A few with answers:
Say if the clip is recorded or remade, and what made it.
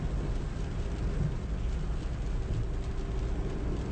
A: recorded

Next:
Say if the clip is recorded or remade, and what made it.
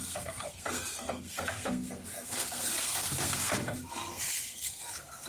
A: remade, codec, SNAC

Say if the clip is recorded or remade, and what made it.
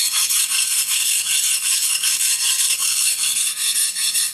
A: remade, codec, SNAC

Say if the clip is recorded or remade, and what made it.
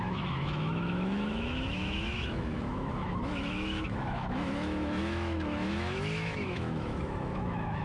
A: remade, autoencoder, DAC-VAE